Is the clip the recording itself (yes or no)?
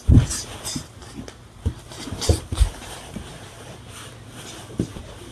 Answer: yes